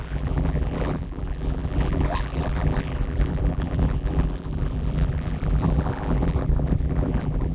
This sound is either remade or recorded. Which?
remade